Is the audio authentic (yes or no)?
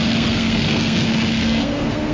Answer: no